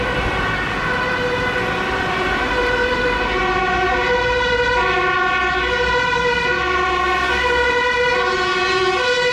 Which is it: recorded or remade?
recorded